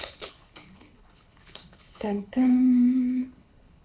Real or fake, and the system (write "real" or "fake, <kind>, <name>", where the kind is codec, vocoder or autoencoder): fake, codec, HILCodec